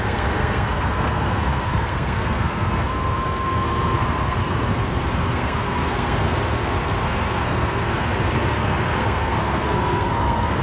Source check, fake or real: fake